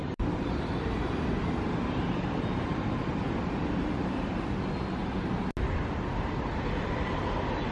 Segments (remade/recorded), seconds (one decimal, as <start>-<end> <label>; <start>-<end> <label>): 0.0-4.5 remade; 4.5-7.7 recorded